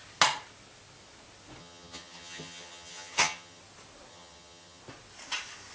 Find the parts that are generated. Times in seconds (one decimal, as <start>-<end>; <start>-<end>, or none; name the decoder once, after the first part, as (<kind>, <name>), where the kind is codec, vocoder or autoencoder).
1.6-3.6 (vocoder, HiFi-GAN); 4.1-4.8